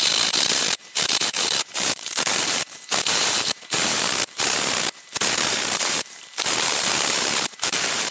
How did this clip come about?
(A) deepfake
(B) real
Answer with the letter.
A